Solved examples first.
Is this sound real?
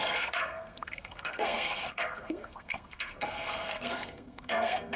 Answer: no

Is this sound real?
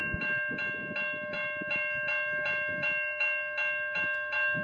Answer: yes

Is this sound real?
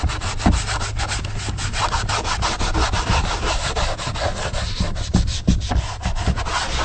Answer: yes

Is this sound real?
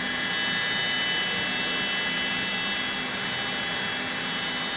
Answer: yes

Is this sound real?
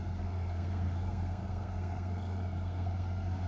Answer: no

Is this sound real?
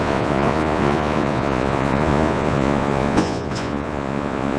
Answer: no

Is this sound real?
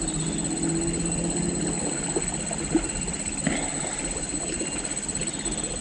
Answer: yes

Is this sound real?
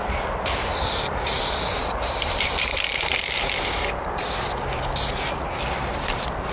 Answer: no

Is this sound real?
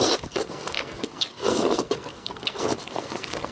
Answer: no